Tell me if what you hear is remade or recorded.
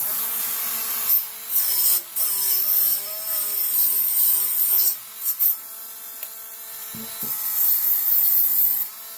recorded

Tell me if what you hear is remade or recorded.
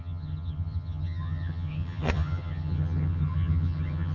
remade